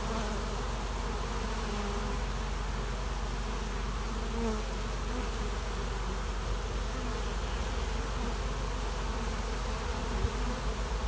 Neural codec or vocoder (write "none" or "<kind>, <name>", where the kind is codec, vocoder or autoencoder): none